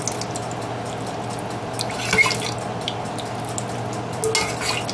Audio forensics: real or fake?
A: real